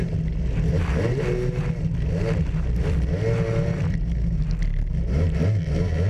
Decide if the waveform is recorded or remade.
recorded